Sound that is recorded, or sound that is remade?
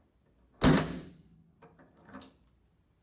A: recorded